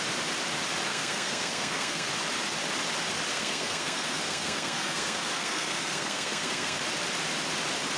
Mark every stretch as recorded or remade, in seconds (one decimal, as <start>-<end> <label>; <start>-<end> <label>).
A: 0.0-0.9 recorded; 0.9-2.1 remade; 2.1-3.3 recorded; 3.3-6.8 remade; 6.8-8.0 recorded

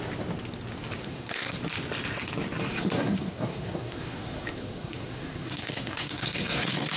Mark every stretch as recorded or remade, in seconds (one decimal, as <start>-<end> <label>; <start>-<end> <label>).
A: 0.0-1.0 recorded; 1.0-1.6 remade; 1.6-2.7 recorded; 2.7-7.0 remade

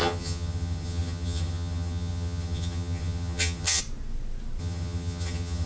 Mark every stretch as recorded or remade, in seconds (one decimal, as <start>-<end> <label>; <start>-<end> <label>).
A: 0.0-3.8 remade; 3.8-4.6 recorded; 4.6-5.7 remade